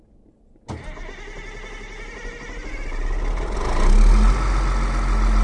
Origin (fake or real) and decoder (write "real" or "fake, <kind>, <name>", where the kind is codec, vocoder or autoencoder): real